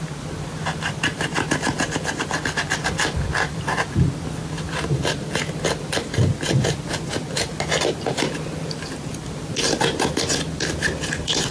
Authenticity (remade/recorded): remade